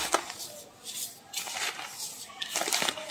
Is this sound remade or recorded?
recorded